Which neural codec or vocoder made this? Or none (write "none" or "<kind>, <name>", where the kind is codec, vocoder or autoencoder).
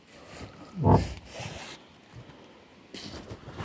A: none